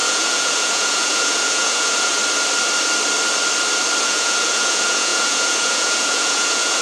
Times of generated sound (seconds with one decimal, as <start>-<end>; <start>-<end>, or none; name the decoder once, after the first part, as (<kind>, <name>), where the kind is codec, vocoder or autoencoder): 0.0-2.2 (vocoder, Vocos); 4.0-6.8